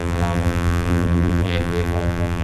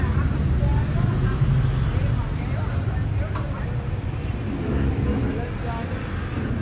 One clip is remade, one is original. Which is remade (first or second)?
first